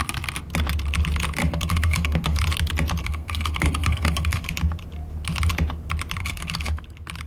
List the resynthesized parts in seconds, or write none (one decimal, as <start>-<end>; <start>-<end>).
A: 1.4-2.4; 3.0-4.5; 6.2-6.8